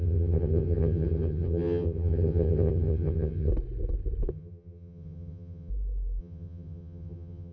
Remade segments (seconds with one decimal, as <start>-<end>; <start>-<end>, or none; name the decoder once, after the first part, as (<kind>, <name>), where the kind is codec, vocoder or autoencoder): 0.0-3.5 (vocoder, HiFi-GAN); 4.3-5.7; 6.2-7.5